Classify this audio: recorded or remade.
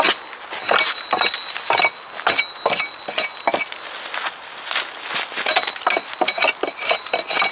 recorded